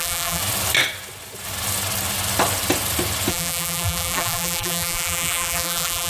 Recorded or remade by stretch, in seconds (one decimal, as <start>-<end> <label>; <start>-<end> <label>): 0.0-0.4 remade; 0.4-3.3 recorded; 3.3-6.1 remade